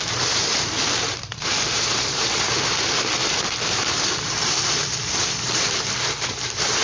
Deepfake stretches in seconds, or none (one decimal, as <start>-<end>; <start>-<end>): 0.0-6.8